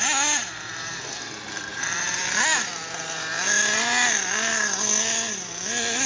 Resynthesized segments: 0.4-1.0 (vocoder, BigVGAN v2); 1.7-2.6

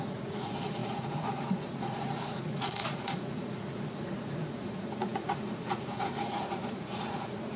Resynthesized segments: 0.0-7.6 (vocoder, Vocos)

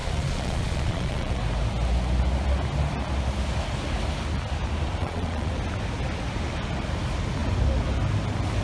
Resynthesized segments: 0.0-1.4 (vocoder, Vocos); 5.0-5.5

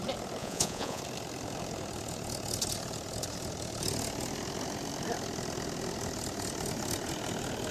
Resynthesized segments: 0.4-1.0 (vocoder, Vocos)

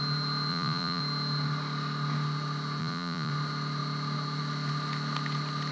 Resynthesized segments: 0.5-1.0 (vocoder, Vocos); 2.8-3.3

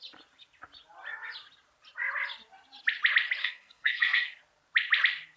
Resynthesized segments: 3.4-4.4 (codec, SNAC)

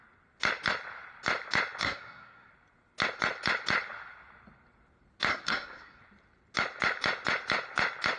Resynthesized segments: 1.8-2.5 (codec, SNAC); 5.3-6.0

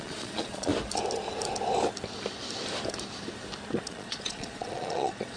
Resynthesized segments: 0.0-0.7 (vocoder, Vocos); 3.9-5.4